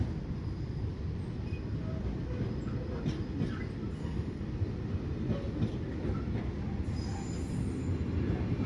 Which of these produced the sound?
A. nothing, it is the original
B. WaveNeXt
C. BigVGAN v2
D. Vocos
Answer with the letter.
A